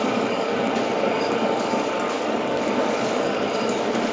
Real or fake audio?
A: fake